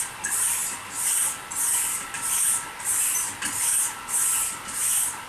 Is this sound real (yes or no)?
yes